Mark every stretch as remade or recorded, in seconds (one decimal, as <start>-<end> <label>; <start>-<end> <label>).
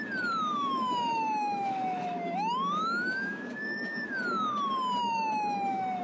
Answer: 0.0-0.5 recorded; 0.5-4.1 remade; 4.1-5.0 recorded; 5.0-6.0 remade